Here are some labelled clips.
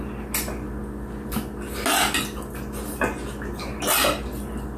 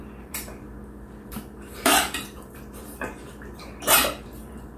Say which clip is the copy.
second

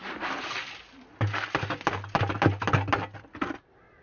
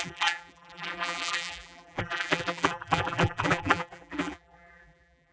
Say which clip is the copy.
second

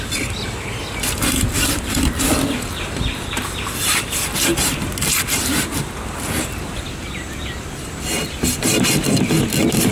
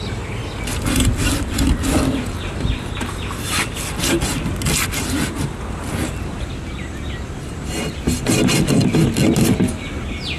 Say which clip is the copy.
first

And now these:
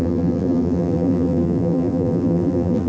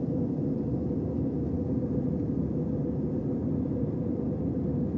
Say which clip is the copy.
first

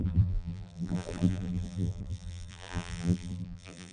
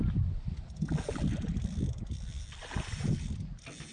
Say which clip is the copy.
first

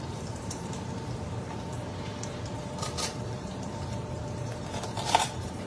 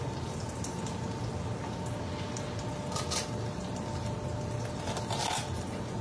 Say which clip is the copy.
first